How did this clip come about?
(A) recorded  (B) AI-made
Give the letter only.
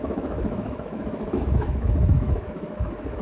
B